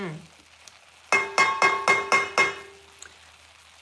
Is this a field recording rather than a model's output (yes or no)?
yes